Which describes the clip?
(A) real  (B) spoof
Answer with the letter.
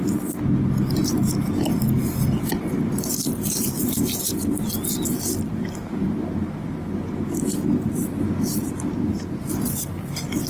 A